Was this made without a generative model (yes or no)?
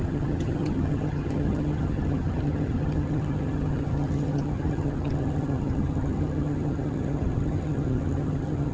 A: no